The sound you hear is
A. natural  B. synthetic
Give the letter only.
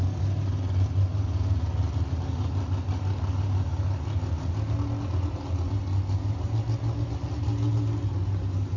A